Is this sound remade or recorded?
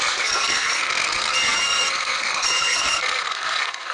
remade